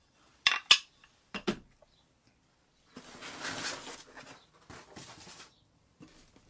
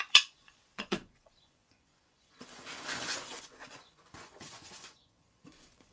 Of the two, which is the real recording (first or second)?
first